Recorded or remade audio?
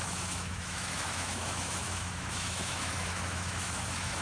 remade